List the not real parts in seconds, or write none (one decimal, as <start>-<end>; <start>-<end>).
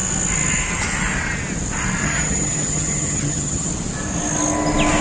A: 2.0-3.7